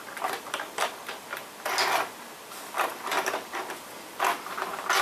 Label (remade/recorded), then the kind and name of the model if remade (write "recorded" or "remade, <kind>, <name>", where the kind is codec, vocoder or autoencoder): recorded